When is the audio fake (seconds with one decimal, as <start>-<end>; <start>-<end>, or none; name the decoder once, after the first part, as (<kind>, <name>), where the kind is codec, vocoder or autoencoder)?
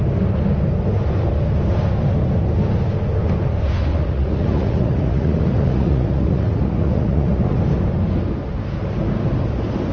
3.9-7.6 (vocoder, Vocos)